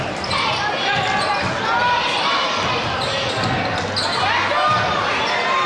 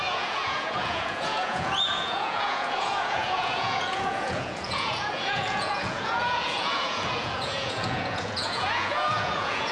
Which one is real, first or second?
first